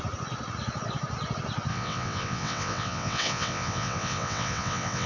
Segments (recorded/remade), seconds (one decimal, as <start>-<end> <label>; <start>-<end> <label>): 0.0-1.7 recorded; 1.7-5.1 remade